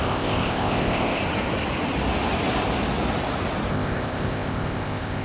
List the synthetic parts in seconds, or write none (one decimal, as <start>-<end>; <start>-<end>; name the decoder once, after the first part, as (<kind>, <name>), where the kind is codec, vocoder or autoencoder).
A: 0.0-1.2 (codec, ZipCodec); 3.7-5.2